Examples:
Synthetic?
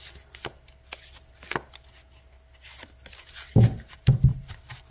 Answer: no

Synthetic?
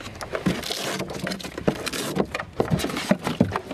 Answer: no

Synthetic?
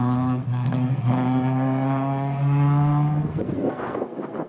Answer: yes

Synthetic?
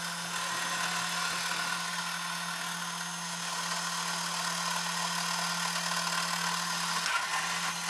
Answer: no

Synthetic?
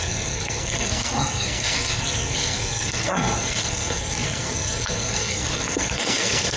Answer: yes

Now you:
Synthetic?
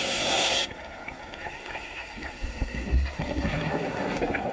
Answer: yes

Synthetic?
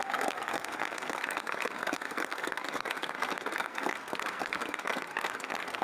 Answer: yes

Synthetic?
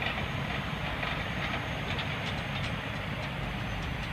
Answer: no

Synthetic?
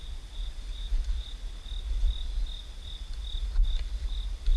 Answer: no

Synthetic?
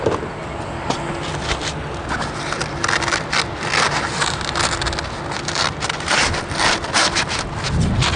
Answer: no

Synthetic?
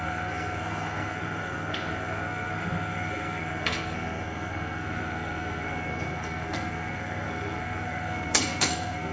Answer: yes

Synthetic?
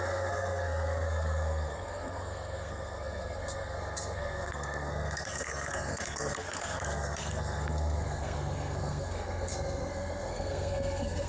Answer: yes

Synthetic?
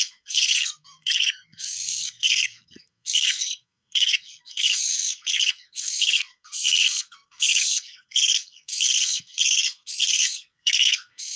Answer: yes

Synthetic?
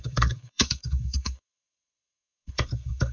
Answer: yes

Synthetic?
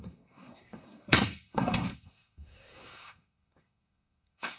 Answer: yes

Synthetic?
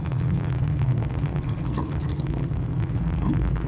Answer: yes